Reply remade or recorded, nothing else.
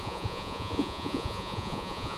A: remade